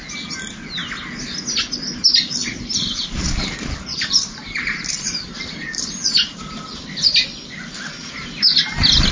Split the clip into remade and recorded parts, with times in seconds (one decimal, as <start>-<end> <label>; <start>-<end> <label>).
0.0-2.4 recorded; 2.4-3.3 remade; 3.3-3.9 recorded; 3.9-6.4 remade; 6.4-9.1 recorded